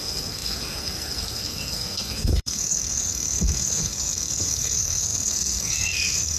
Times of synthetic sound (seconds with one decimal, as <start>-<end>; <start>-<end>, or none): 0.0-6.4